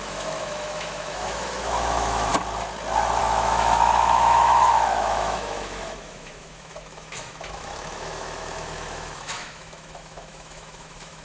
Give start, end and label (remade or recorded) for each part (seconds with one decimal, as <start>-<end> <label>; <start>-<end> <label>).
0.0-2.3 remade; 2.3-3.2 recorded; 3.2-11.2 remade